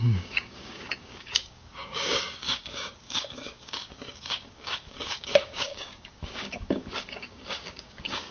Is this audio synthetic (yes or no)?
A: yes